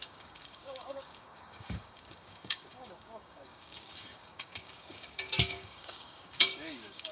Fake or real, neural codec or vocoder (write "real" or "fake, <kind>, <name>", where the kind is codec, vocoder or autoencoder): fake, codec, DAC